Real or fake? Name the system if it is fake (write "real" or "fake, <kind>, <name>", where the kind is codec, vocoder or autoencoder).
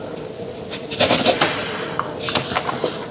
real